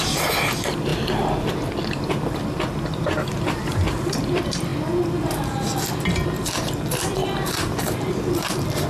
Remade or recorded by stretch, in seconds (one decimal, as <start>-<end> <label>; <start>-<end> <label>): 0.0-0.9 remade; 0.9-3.3 recorded; 3.3-4.7 remade; 4.7-6.8 recorded; 6.8-8.9 remade